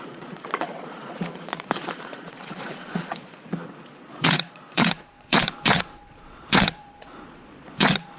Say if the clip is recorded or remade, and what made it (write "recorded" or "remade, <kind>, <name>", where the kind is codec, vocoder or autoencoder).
remade, vocoder, Vocos